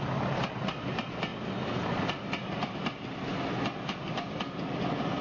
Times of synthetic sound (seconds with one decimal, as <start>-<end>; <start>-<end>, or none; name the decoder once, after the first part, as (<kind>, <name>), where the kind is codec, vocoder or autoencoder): none

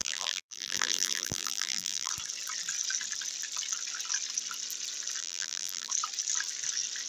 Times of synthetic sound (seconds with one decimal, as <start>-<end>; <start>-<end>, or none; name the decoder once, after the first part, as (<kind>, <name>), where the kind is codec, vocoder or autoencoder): 0.0-2.1 (vocoder, BigVGAN v2); 5.2-5.9

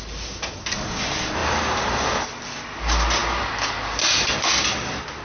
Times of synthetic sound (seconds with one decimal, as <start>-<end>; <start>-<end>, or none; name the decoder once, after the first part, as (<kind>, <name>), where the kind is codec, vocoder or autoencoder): none

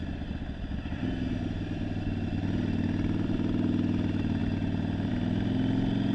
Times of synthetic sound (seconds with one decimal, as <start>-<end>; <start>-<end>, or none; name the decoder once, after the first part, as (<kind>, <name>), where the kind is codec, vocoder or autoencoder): none

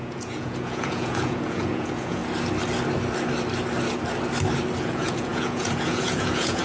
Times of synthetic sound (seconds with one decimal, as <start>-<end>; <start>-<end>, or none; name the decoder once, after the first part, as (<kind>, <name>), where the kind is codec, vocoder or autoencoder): 0.0-2.2 (vocoder, Vocos); 4.8-6.6

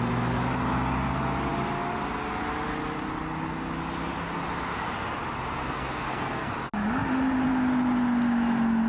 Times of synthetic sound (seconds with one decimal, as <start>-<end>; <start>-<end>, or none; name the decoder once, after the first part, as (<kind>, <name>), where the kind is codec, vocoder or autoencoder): 5.6-6.5 (codec, SNAC)

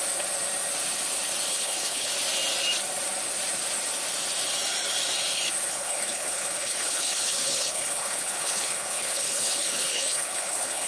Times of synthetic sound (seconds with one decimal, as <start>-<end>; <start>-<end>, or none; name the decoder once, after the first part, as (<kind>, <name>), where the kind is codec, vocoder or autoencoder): 1.5-2.1 (codec, HILCodec); 5.7-10.9